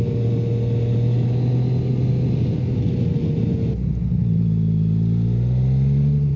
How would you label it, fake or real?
real